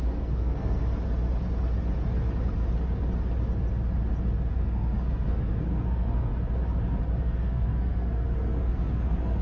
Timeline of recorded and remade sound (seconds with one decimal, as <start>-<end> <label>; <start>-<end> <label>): 0.0-0.8 remade; 0.8-4.5 recorded; 4.5-6.3 remade; 6.3-7.2 recorded; 7.2-9.4 remade